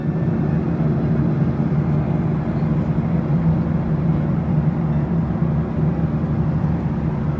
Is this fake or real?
real